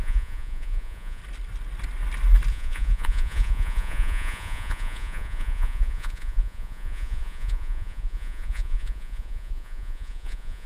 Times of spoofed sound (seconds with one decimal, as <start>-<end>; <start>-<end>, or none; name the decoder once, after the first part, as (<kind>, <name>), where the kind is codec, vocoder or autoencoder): 0.0-1.2 (vocoder, Vocos); 2.5-10.7